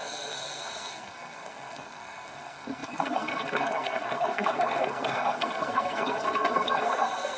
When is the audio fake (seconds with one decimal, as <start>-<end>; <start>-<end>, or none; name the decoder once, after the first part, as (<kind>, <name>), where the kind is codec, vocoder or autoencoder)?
0.0-7.4 (codec, SNAC)